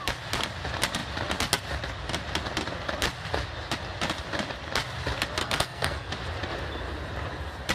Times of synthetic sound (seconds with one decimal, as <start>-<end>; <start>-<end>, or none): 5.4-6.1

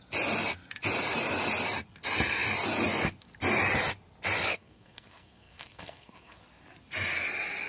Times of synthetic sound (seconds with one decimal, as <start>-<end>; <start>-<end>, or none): 4.5-6.4

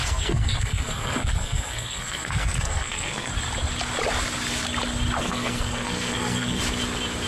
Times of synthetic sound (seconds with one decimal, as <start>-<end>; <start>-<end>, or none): 0.0-3.3; 5.2-6.6

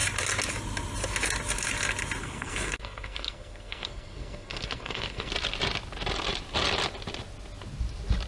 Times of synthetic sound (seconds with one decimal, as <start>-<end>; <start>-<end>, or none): 2.2-5.3

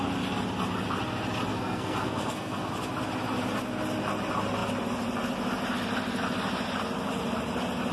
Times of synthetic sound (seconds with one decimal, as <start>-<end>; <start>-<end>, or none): 1.5-2.7

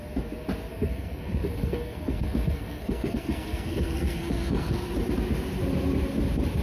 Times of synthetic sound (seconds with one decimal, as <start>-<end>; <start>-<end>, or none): 0.7-4.7

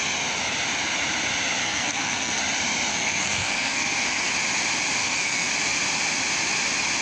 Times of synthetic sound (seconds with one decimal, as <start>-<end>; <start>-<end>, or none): 1.6-2.4; 2.9-4.3; 5.0-5.5

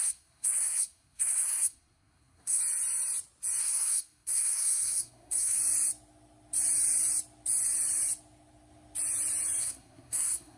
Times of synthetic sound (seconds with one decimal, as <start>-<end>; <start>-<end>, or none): 0.0-2.6; 3.6-5.6; 9.6-10.6